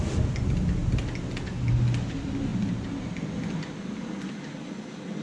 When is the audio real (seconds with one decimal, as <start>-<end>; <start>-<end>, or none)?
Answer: 0.0-5.2